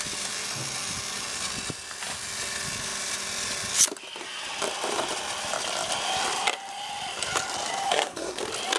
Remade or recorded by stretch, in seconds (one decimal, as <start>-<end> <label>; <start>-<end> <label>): 0.0-7.9 recorded; 7.9-8.4 remade; 8.4-8.8 recorded